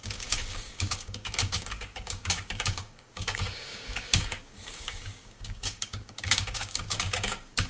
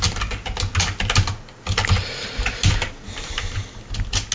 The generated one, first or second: first